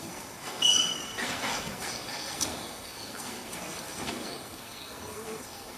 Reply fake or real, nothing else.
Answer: fake